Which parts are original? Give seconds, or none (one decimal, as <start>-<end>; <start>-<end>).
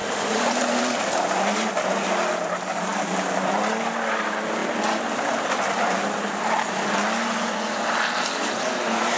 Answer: 0.8-9.2